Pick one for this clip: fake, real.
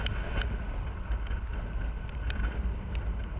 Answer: real